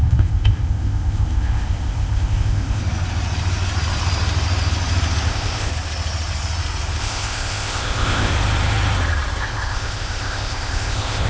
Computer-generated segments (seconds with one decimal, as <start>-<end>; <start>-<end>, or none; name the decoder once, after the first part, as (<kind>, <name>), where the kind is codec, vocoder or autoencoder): 0.0-2.8 (codec, ZipCodec); 5.3-5.7; 7.0-8.3; 9.4-11.3